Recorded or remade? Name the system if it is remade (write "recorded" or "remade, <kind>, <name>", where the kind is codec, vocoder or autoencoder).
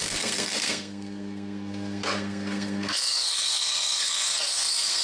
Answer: remade, codec, SNAC